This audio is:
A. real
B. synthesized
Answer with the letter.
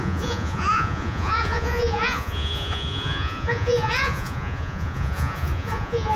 B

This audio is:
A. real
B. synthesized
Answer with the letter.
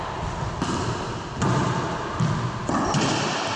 A